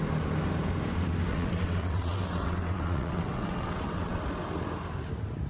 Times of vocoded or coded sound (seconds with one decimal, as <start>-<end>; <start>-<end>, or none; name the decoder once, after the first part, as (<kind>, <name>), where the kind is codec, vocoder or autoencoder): 1.3-4.2 (vocoder, WaveNeXt)